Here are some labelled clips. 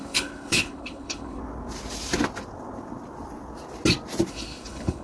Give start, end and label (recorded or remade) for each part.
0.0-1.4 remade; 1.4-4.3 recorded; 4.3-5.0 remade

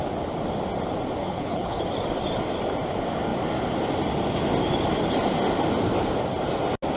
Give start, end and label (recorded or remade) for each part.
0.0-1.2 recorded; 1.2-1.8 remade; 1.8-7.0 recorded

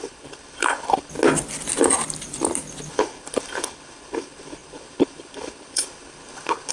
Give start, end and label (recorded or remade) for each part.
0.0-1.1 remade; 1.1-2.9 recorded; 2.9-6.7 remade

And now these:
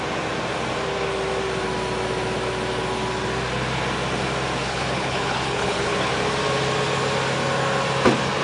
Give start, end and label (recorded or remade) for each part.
0.0-4.6 recorded; 4.6-6.1 remade; 6.1-8.4 recorded

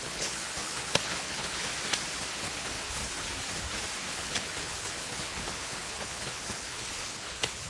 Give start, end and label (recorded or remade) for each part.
0.0-1.7 remade; 1.7-2.4 recorded; 2.4-3.0 remade; 3.0-4.1 recorded; 4.1-7.7 remade

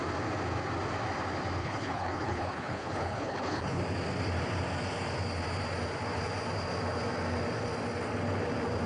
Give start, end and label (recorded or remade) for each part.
0.0-1.6 recorded; 1.6-3.8 remade; 3.8-8.9 recorded